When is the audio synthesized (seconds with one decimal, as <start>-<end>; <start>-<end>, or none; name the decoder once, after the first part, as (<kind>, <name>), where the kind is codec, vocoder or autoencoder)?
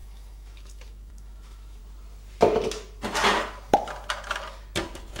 0.0-1.8 (autoencoder, DAC-VAE)